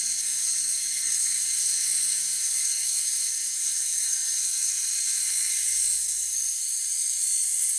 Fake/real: fake